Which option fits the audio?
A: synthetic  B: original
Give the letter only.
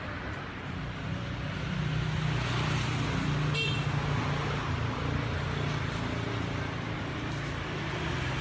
B